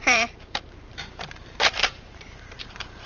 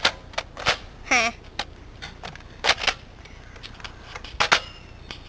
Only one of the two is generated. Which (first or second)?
first